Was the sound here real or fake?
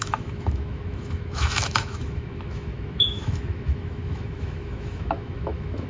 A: fake